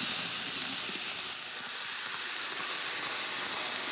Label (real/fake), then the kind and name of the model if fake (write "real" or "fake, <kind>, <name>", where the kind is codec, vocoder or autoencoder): real